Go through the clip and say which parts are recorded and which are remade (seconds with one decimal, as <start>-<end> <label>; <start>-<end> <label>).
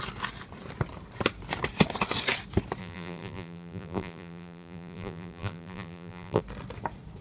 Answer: 0.0-2.8 recorded; 2.8-6.4 remade; 6.4-7.2 recorded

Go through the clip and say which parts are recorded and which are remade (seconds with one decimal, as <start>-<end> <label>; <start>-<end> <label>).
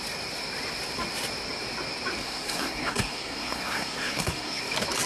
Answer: 0.0-2.2 recorded; 2.2-4.6 remade; 4.6-5.1 recorded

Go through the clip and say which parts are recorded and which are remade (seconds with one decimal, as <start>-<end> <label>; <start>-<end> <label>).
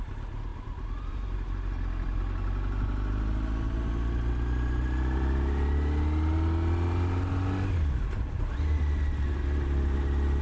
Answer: 0.0-10.4 recorded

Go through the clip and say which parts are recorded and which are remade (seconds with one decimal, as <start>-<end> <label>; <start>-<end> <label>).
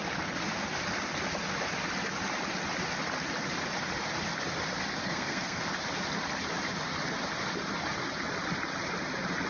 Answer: 0.0-5.0 recorded; 5.0-5.6 remade; 5.6-9.5 recorded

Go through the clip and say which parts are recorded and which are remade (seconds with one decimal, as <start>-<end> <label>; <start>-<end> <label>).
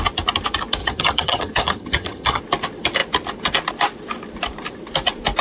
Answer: 0.0-0.8 recorded; 0.8-2.4 remade; 2.4-5.4 recorded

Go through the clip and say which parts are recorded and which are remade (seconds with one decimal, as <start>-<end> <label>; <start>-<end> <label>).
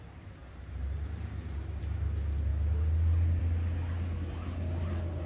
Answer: 0.0-5.3 recorded